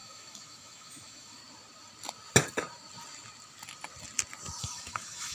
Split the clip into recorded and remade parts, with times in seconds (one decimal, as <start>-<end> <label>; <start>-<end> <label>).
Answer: 0.0-1.4 remade; 1.4-4.6 recorded; 4.6-5.3 remade